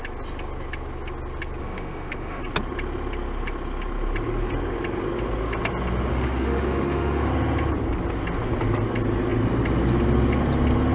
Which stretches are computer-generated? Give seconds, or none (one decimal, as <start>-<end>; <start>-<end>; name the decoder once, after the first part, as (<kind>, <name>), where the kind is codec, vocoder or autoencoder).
1.6-2.4 (autoencoder, DAC-VAE); 6.1-7.3